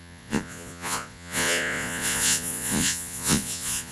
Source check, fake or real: fake